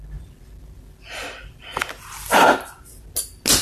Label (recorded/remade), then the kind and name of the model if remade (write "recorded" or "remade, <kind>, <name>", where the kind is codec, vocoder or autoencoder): recorded